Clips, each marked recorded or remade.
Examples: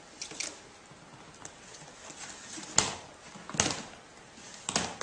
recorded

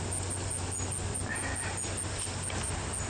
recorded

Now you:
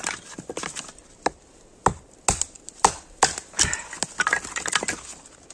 recorded